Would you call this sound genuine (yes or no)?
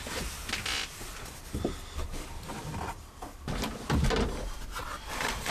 yes